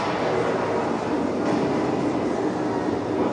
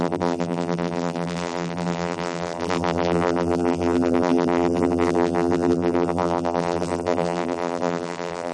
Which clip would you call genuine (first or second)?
first